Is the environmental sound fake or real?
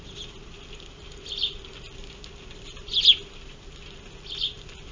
real